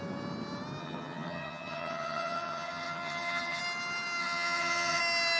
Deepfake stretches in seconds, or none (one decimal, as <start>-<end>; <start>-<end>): 0.8-3.6; 4.2-5.0